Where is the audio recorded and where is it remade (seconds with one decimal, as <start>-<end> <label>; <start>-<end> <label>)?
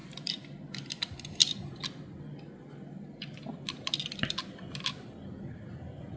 0.0-6.2 recorded